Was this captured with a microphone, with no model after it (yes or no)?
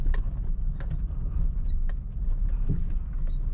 yes